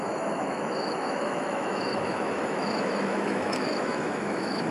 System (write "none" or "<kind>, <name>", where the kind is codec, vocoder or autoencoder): autoencoder, DAC-VAE